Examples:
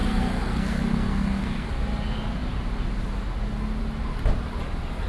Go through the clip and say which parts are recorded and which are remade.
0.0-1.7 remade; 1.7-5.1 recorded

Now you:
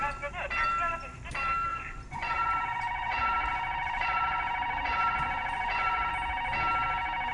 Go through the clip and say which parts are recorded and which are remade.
0.0-1.7 recorded; 1.7-6.1 remade; 6.1-7.3 recorded

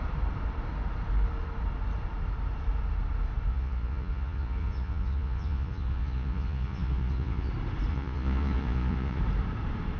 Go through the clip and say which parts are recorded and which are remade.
0.0-3.5 recorded; 3.5-7.5 remade; 7.5-7.9 recorded; 7.9-9.2 remade; 9.2-10.0 recorded

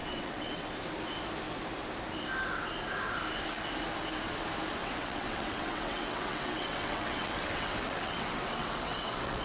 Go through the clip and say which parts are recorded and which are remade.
0.0-0.7 remade; 0.7-4.8 recorded; 4.8-9.4 remade